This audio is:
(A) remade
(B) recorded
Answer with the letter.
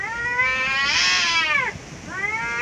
B